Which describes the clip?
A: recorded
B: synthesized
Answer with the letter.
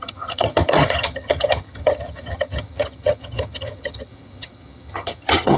B